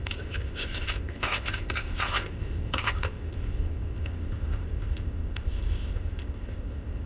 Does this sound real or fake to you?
fake